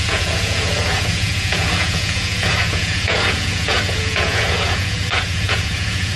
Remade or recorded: remade